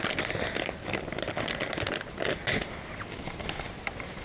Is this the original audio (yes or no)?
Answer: yes